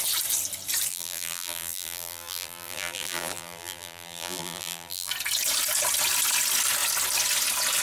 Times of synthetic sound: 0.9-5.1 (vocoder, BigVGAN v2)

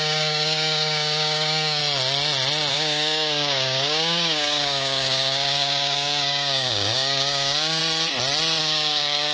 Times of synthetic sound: 0.0-1.8 (codec, DAC); 2.7-7.8; 8.6-9.3

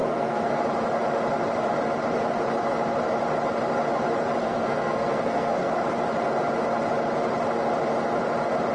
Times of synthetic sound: 0.0-0.6 (codec, SNAC); 4.4-5.7